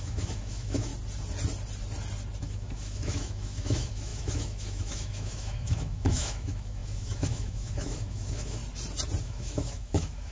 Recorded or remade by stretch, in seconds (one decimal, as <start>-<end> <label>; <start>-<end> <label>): 0.0-0.9 remade; 0.9-2.4 recorded; 2.4-8.6 remade; 8.6-9.2 recorded; 9.2-10.3 remade